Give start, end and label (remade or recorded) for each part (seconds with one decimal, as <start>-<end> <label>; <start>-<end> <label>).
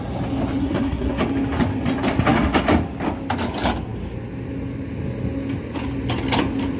0.0-0.6 recorded; 0.6-1.2 remade; 1.2-6.8 recorded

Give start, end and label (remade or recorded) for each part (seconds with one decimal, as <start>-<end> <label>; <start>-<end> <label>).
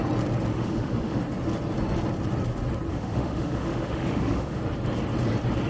0.0-0.5 recorded; 0.5-1.2 remade; 1.2-2.9 recorded; 2.9-4.6 remade; 4.6-5.7 recorded